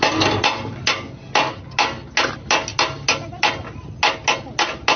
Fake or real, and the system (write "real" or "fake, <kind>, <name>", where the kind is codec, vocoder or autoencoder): real